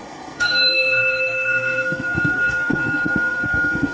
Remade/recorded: remade